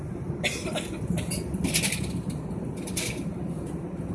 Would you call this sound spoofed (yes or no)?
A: no